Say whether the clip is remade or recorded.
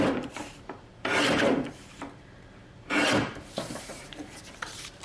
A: remade